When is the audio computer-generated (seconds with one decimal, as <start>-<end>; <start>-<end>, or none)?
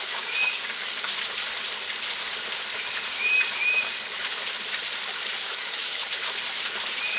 0.0-1.1; 5.4-6.0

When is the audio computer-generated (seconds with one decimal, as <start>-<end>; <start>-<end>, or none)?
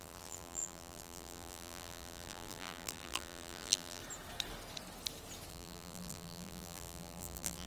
0.0-4.0; 5.5-7.7